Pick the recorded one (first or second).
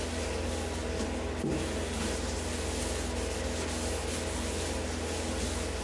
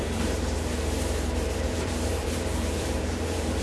first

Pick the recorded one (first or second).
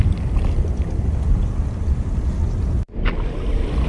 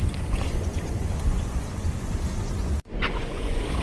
first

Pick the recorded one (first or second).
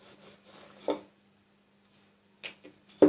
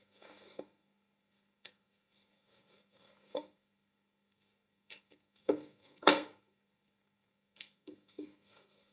first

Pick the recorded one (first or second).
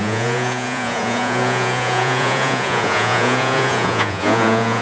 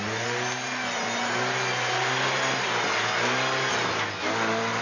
second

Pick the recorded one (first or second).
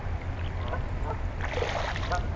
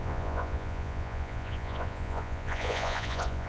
first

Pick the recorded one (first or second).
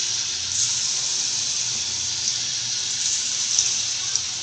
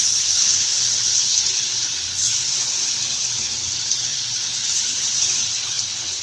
first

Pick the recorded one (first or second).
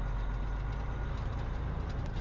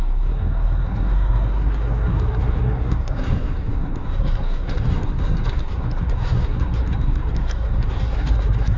first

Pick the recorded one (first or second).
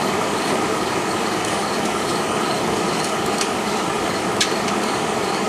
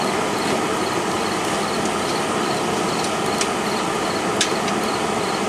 second